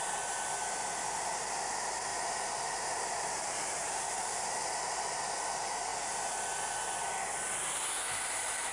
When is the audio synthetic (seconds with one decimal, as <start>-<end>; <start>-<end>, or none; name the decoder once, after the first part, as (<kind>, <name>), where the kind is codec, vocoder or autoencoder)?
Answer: 2.1-4.6 (vocoder, BigVGAN v2)